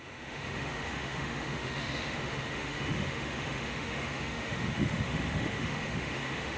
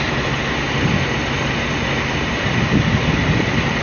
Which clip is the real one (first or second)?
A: second